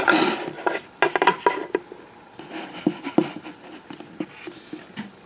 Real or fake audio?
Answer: real